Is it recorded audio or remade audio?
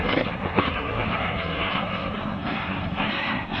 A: remade